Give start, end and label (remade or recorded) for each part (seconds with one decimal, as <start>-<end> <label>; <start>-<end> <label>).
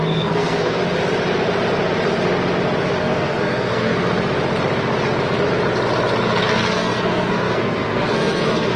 0.0-0.8 remade; 0.8-3.0 recorded; 3.0-4.0 remade; 4.0-6.4 recorded; 6.4-8.8 remade